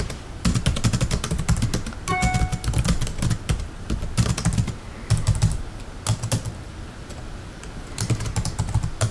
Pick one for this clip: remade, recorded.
recorded